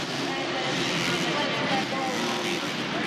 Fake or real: real